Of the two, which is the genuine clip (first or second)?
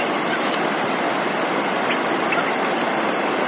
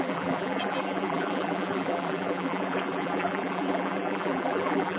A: first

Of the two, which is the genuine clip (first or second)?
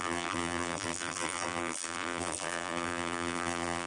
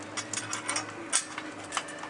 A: second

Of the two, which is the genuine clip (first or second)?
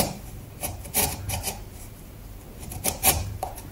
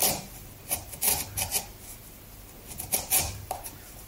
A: second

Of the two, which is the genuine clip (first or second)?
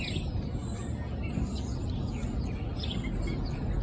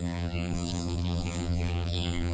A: first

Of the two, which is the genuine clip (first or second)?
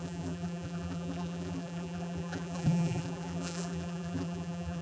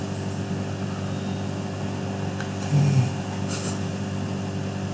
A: second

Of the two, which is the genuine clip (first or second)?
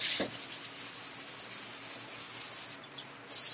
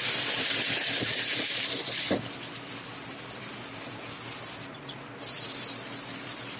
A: first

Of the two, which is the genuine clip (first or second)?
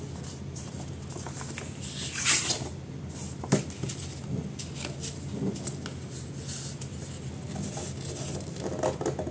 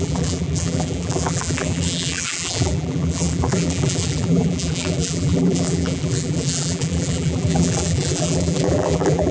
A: first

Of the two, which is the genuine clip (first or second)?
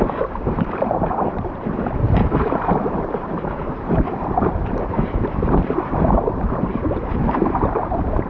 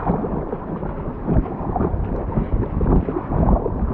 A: second